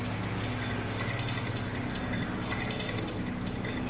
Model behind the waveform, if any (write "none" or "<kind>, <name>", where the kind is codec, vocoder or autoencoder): none